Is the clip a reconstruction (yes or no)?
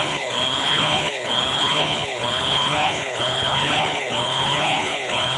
yes